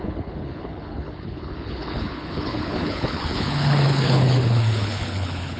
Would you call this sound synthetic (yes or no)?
yes